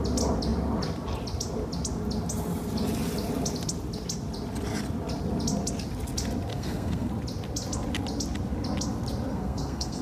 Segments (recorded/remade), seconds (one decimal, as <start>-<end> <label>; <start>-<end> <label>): 0.0-6.5 recorded; 6.5-7.1 remade; 7.1-9.3 recorded; 9.3-10.0 remade